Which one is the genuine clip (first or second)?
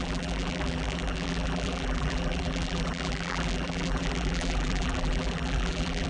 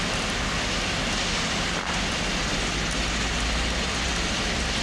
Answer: second